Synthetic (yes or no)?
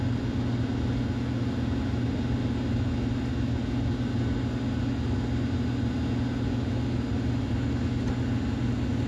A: no